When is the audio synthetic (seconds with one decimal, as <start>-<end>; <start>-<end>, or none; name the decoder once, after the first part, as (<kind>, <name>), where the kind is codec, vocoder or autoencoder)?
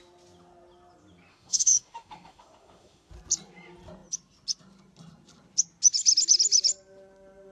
1.3-3.1 (autoencoder, DAC-VAE)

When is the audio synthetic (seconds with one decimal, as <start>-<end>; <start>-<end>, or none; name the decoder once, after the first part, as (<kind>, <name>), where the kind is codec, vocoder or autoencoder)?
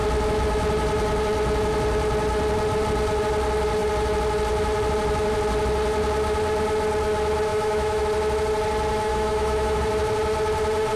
7.5-8.0 (autoencoder, DAC-VAE); 9.1-9.8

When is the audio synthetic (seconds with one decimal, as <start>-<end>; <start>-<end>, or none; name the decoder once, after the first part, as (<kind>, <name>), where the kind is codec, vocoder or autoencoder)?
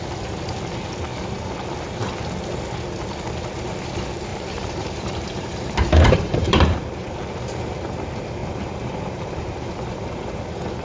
4.3-7.1 (vocoder, BigVGAN v2); 8.4-10.3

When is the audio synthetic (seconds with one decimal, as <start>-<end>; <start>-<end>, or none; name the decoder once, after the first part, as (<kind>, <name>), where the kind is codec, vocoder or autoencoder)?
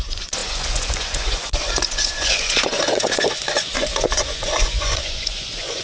0.0-5.8 (vocoder, Vocos)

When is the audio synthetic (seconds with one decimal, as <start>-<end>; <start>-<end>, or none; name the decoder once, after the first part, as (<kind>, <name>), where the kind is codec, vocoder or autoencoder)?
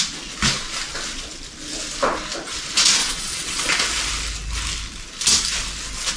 3.0-3.7 (vocoder, WaveNeXt)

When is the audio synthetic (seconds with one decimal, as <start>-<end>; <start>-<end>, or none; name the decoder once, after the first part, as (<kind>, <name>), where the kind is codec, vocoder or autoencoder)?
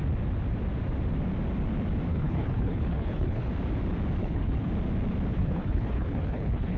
2.1-3.5 (codec, HILCodec); 4.2-4.7; 5.3-6.8